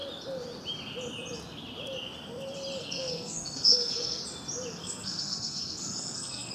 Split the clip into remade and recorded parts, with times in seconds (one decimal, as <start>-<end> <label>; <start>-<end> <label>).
0.0-2.8 recorded; 2.8-4.2 remade; 4.2-4.8 recorded; 4.8-6.5 remade